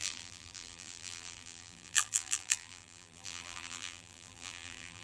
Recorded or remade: remade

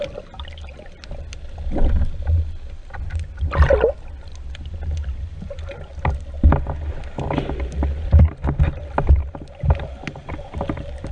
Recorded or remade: recorded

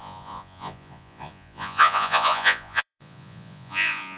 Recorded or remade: remade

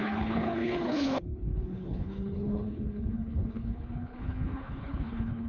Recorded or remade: remade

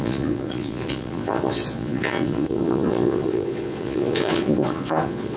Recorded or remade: remade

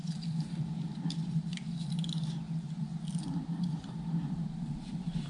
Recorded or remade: remade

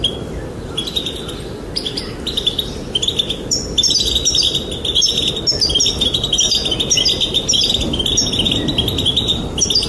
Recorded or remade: recorded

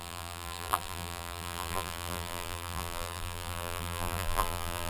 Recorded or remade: remade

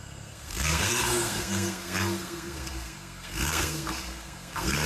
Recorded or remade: remade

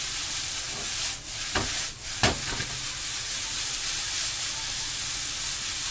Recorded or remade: recorded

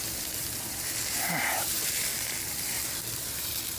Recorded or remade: remade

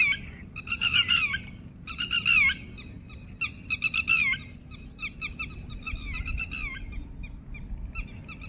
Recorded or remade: recorded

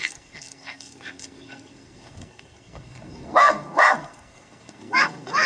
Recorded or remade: remade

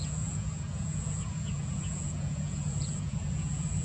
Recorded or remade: remade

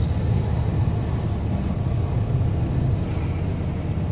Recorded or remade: recorded